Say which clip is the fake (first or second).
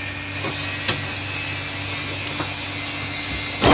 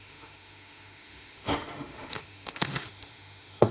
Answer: second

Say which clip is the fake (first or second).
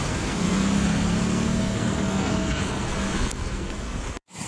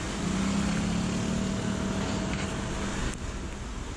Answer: first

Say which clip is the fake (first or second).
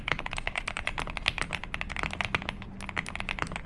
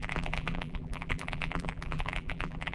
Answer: second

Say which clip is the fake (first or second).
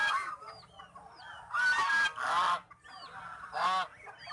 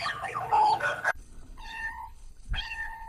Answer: second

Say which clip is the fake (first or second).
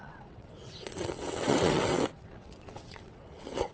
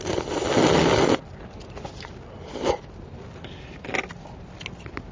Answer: first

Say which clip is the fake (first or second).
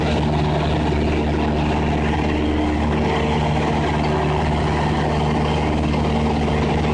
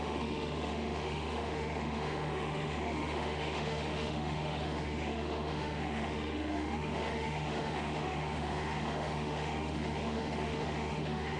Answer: second